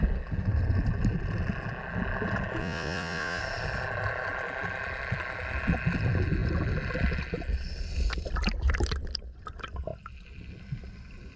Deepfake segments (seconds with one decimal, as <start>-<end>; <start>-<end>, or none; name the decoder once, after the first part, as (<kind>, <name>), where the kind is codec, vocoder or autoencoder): 2.6-3.4 (vocoder, Vocos)